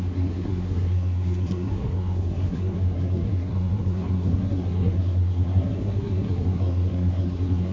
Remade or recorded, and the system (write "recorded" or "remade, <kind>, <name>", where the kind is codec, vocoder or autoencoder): remade, codec, SNAC